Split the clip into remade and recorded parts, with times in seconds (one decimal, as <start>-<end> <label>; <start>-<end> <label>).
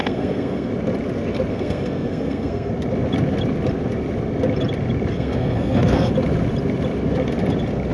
0.0-0.7 remade; 0.7-1.5 recorded; 1.5-2.7 remade; 2.7-5.1 recorded; 5.1-6.1 remade; 6.1-7.9 recorded